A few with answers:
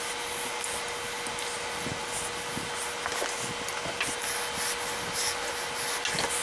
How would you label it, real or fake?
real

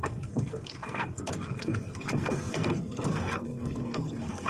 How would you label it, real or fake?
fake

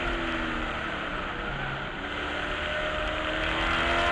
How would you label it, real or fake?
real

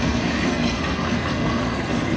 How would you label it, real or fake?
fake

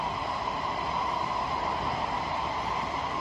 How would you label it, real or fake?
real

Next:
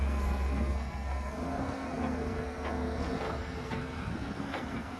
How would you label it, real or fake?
fake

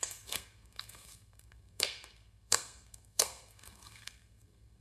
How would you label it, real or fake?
fake